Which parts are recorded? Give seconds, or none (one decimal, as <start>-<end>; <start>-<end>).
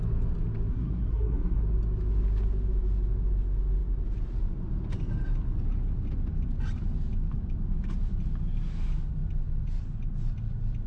0.0-0.7; 1.6-10.9